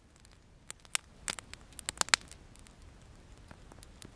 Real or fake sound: real